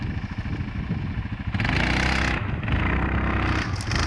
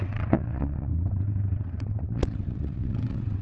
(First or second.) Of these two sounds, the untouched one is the first